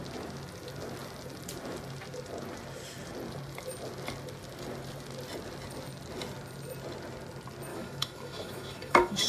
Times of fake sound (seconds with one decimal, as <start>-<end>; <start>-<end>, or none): 7.7-9.3